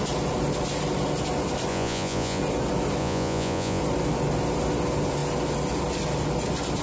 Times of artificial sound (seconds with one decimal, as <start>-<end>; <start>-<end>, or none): 1.7-2.4; 3.0-3.8